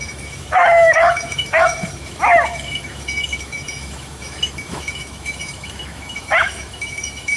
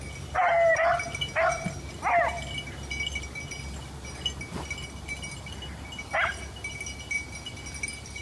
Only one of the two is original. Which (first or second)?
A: second